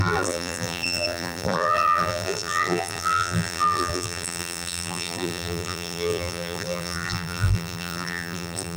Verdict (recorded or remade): remade